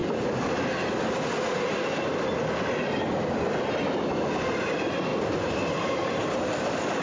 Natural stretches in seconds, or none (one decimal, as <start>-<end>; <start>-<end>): 0.0-5.1; 6.4-7.0